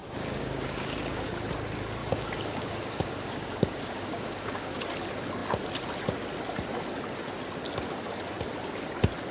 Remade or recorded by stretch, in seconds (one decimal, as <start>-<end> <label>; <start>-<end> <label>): 0.0-1.3 remade; 1.3-2.0 recorded; 2.0-4.8 remade; 4.8-9.3 recorded